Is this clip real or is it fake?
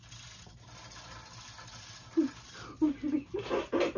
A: real